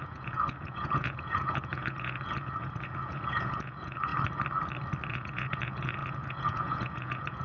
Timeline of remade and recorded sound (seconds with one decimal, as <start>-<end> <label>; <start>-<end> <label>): 0.0-4.1 remade; 4.1-5.1 recorded; 5.1-7.4 remade

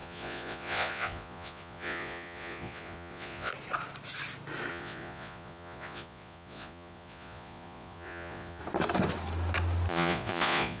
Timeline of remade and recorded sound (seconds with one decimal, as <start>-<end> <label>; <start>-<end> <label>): 0.0-3.5 remade; 3.5-4.7 recorded; 4.7-8.6 remade; 8.6-9.9 recorded; 9.9-10.8 remade